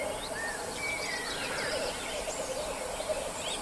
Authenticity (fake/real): fake